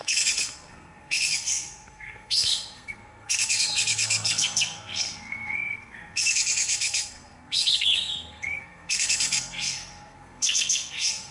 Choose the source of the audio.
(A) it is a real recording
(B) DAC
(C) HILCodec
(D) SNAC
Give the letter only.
D